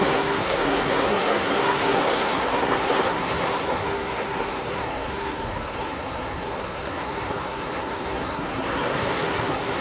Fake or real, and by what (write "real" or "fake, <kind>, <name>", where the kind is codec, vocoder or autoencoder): fake, codec, SNAC